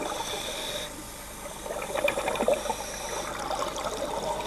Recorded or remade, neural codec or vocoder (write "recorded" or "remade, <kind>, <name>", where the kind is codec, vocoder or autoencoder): recorded